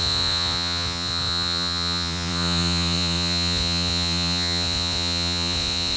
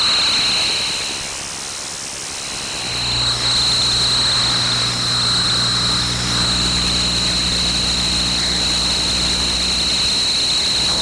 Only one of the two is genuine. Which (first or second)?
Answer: second